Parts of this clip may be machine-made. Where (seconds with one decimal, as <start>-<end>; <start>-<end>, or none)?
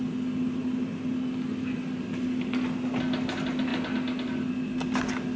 none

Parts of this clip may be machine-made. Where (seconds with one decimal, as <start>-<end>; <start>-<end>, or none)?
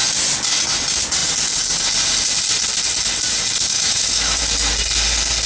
3.7-4.4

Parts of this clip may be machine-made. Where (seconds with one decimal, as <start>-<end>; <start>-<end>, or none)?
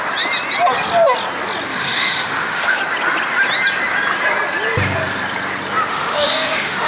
1.7-2.8; 5.9-6.9